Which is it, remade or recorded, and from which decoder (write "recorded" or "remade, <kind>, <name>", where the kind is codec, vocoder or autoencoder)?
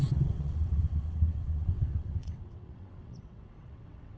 remade, vocoder, WaveNeXt